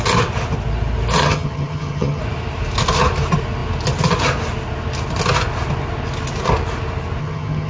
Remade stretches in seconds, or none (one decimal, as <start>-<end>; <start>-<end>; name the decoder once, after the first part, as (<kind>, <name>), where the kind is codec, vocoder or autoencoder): 1.2-2.2 (vocoder, HiFi-GAN); 7.2-7.7